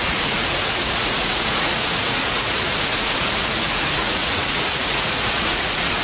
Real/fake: fake